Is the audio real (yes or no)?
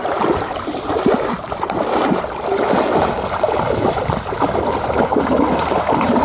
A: no